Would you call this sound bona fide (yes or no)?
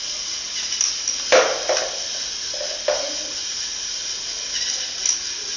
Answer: yes